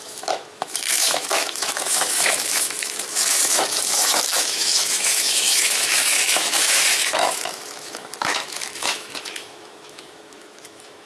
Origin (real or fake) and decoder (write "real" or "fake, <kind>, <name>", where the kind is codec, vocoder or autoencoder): fake, autoencoder, DAC-VAE